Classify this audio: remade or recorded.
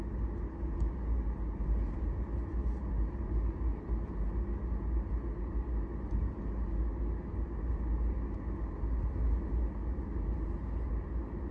recorded